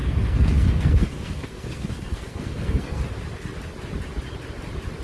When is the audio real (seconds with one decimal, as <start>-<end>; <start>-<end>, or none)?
3.0-5.0